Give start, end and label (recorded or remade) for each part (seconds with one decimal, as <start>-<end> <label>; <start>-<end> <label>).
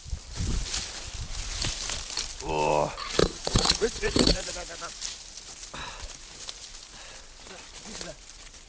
0.0-3.2 recorded; 3.2-4.5 remade; 4.5-8.7 recorded